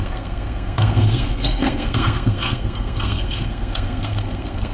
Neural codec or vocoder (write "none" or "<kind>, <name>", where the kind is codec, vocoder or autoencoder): codec, SNAC